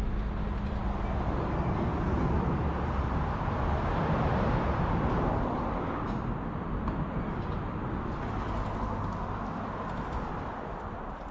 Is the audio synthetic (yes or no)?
no